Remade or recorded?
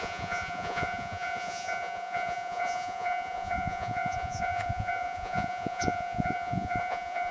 remade